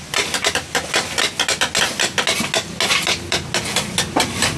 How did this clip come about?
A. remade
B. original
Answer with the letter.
B